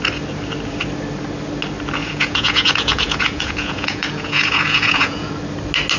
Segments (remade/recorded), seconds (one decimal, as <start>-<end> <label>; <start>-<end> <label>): 0.0-2.0 recorded; 2.0-5.3 remade; 5.3-6.0 recorded